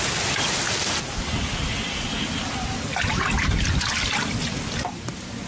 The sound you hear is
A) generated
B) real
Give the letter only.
B